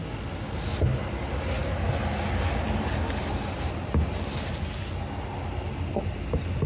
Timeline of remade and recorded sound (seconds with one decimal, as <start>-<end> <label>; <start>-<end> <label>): 0.0-6.7 recorded

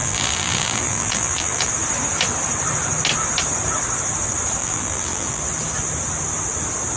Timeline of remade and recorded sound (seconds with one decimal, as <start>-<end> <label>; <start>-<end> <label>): 0.0-1.7 remade; 1.7-4.6 recorded; 4.6-5.4 remade; 5.4-7.0 recorded

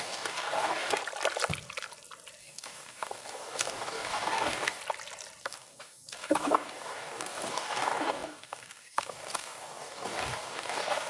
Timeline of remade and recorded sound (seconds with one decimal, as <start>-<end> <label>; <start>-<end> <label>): 0.0-1.0 remade; 1.0-2.4 recorded; 2.4-4.8 remade; 4.8-5.4 recorded; 5.4-11.1 remade

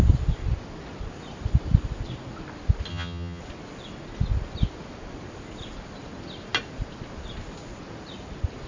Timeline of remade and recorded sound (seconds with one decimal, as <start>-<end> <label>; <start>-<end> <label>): 0.0-2.9 recorded; 2.9-3.4 remade; 3.4-8.7 recorded

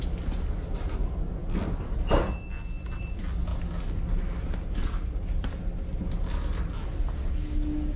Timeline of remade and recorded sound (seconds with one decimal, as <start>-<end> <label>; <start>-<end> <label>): 0.0-8.0 recorded

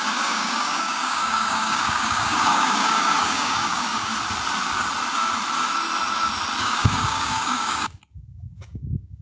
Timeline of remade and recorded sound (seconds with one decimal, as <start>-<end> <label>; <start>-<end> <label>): 0.0-4.1 remade; 4.1-6.6 recorded; 6.6-9.2 remade